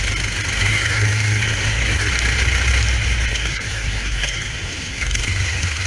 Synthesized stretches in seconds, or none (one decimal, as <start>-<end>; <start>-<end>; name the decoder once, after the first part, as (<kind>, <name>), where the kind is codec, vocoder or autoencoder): 0.6-2.1 (codec, SNAC); 3.3-5.9